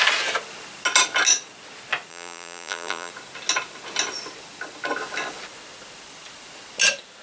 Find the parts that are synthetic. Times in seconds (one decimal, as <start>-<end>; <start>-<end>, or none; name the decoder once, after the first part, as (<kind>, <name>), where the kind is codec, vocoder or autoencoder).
2.1-3.1 (vocoder, BigVGAN v2)